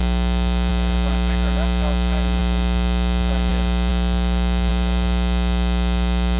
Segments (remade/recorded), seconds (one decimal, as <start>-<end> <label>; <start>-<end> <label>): 0.0-0.7 remade; 0.7-3.9 recorded; 3.9-4.7 remade; 4.7-6.4 recorded